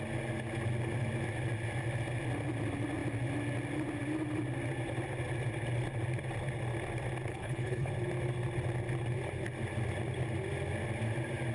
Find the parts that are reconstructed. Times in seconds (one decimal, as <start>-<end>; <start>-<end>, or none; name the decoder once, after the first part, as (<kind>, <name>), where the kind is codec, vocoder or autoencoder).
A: 7.3-7.9 (codec, HILCodec)